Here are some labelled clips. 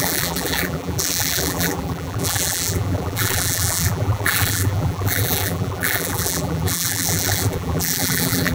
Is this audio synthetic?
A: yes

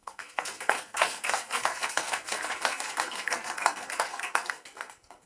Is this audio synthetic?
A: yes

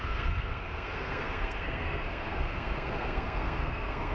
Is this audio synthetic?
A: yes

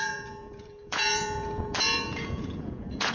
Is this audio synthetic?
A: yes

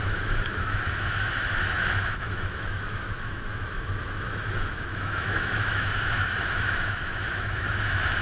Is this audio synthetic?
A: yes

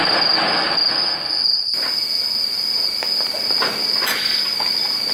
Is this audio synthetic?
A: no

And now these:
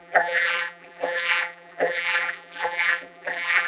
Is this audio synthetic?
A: yes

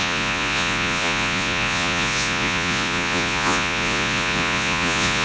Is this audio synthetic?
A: yes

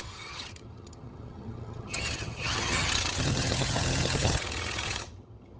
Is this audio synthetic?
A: yes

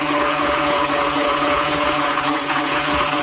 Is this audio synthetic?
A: yes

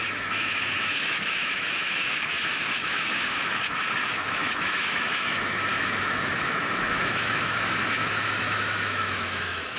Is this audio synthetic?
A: yes